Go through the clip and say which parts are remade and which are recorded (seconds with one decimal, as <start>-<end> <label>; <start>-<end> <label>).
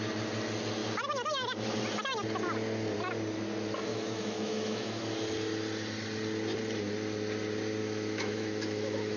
0.0-3.9 recorded; 3.9-5.0 remade; 5.0-7.8 recorded; 7.8-9.2 remade